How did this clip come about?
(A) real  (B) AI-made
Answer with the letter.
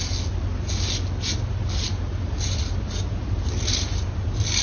A